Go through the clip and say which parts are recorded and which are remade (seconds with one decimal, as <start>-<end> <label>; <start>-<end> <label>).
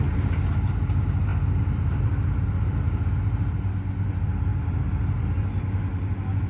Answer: 0.0-1.3 recorded; 1.3-2.4 remade; 2.4-4.5 recorded; 4.5-5.0 remade; 5.0-6.5 recorded